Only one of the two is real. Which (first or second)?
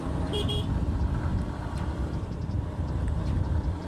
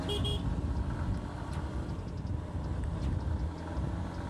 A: second